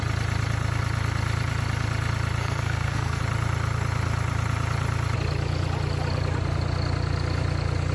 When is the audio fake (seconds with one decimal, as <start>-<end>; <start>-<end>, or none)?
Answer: 2.4-3.2